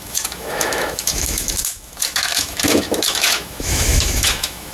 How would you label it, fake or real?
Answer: fake